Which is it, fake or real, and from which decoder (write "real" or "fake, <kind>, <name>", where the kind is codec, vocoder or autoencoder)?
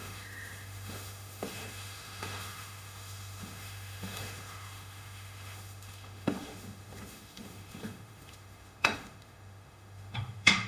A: fake, autoencoder, DAC-VAE